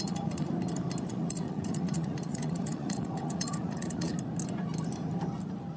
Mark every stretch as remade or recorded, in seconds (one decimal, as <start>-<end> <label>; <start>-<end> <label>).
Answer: 0.0-0.5 remade; 0.5-1.1 recorded; 1.1-4.1 remade; 4.1-5.8 recorded